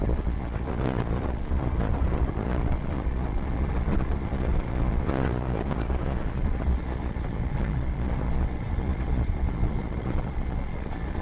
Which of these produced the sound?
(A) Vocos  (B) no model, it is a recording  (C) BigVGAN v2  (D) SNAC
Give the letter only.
A